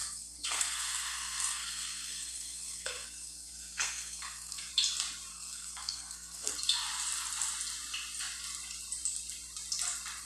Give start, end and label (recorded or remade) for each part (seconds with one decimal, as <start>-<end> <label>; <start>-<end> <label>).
0.0-4.7 remade; 4.7-5.3 recorded; 5.3-6.5 remade; 6.5-10.3 recorded